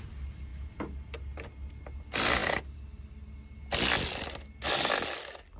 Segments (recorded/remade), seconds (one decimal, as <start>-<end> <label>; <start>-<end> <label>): 0.0-5.6 recorded